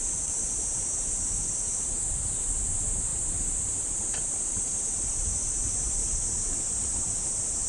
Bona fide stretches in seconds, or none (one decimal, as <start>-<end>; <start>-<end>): none